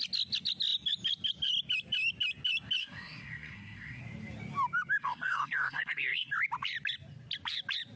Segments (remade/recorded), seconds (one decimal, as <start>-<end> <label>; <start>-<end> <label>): 0.0-2.8 recorded; 2.8-4.0 remade; 4.0-5.0 recorded; 5.0-6.3 remade; 6.3-8.0 recorded